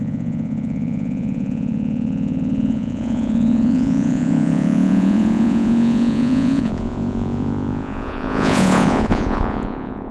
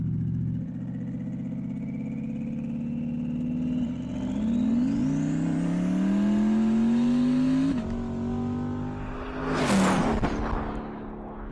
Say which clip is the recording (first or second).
second